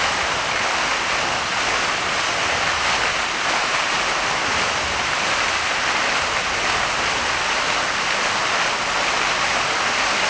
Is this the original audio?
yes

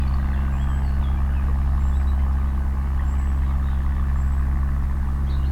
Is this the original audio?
yes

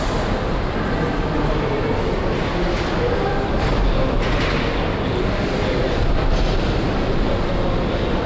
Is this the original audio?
yes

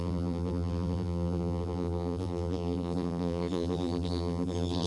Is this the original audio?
no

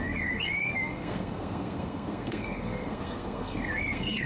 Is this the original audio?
no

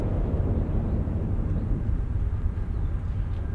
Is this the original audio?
no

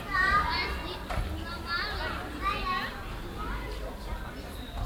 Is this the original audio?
yes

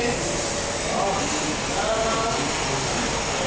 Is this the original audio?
yes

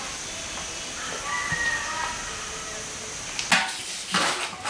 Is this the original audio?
yes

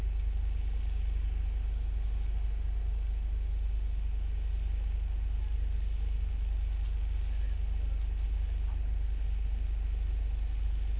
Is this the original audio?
yes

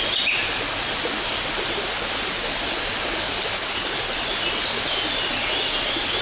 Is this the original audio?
yes